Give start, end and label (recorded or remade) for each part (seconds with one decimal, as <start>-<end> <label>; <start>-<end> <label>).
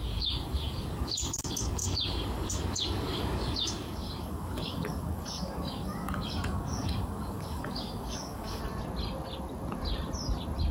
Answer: 0.0-8.6 remade; 8.6-10.7 recorded